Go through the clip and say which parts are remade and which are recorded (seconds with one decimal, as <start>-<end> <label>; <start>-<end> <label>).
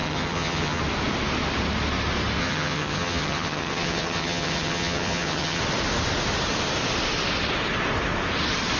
0.0-0.8 remade; 0.8-2.4 recorded; 2.4-5.6 remade; 5.6-8.8 recorded